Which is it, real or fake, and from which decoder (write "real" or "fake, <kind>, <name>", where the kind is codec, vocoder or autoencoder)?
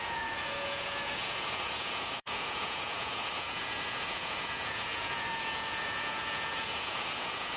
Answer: fake, vocoder, Vocos